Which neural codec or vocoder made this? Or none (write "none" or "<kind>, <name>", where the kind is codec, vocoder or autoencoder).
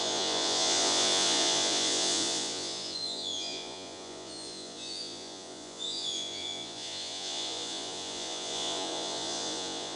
vocoder, Vocos